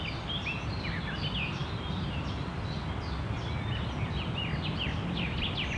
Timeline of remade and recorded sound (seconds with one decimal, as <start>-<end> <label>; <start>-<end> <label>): 0.0-5.8 recorded